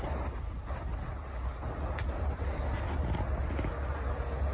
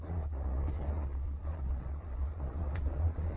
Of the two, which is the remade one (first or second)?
second